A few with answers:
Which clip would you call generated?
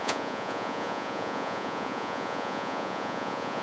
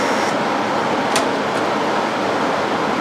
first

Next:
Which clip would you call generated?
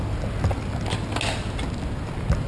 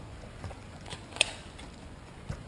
second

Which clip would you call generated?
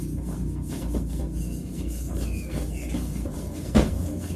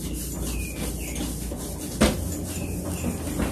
first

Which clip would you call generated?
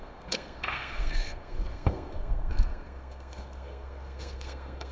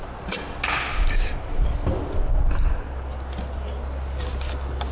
first